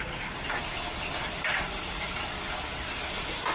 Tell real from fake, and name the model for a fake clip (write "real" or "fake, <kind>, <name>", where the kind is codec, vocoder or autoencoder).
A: real